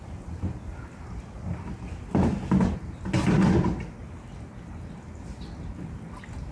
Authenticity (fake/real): real